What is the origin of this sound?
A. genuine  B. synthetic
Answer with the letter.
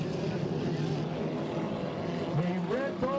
A